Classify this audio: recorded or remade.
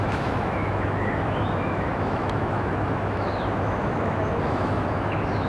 remade